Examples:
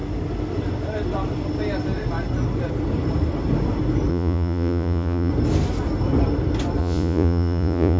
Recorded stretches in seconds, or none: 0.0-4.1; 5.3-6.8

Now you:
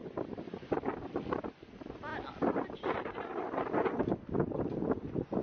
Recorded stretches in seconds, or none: 0.0-5.4

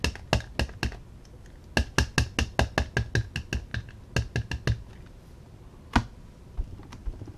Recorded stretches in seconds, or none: 0.0-7.4

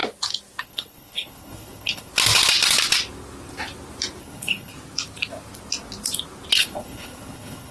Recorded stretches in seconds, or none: 0.0-0.6; 2.1-4.2; 4.7-6.6

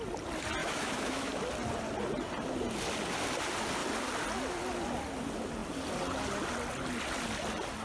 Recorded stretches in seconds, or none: 0.0-0.6; 1.3-7.8

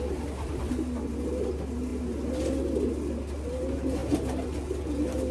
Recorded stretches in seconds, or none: 0.0-5.3

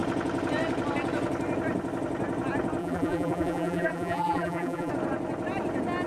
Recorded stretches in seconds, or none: 0.0-2.8; 4.9-6.1

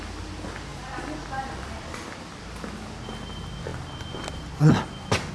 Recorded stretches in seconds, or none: 0.0-5.3